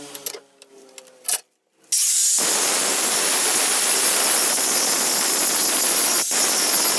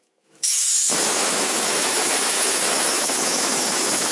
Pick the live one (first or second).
first